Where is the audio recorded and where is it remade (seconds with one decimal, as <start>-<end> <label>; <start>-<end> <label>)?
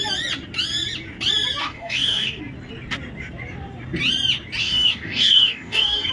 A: 0.0-1.6 recorded; 1.6-2.4 remade; 2.4-4.6 recorded; 4.6-6.1 remade